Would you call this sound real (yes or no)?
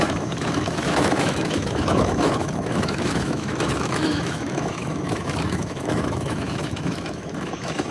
no